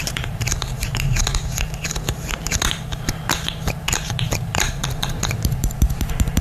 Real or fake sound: fake